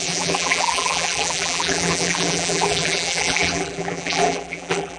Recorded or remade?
remade